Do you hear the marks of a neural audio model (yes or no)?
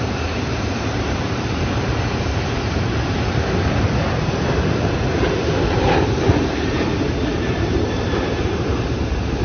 yes